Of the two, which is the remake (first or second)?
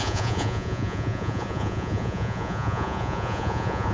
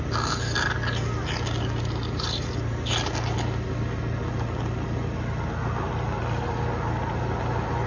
first